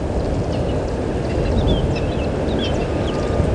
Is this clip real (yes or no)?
yes